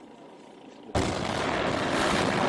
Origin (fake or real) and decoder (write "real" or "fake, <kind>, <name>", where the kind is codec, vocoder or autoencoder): real